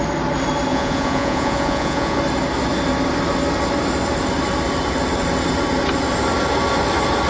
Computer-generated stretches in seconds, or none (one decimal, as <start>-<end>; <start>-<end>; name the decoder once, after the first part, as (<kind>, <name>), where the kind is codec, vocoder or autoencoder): 0.7-2.2 (vocoder, Vocos)